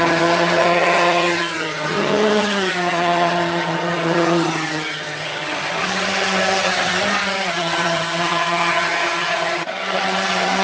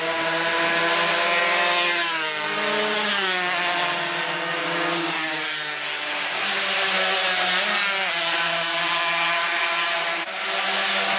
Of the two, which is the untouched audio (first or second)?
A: second